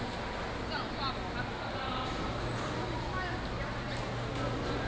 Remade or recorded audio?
recorded